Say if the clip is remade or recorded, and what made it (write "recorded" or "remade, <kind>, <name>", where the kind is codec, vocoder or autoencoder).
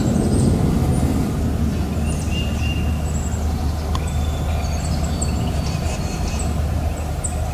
recorded